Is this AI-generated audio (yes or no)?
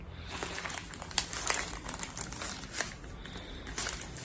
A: no